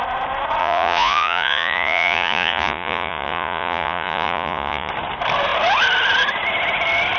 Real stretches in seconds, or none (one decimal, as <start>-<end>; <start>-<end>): 0.0-0.6; 4.9-7.2